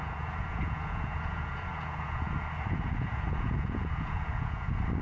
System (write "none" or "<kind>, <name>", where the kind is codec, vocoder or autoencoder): vocoder, Vocos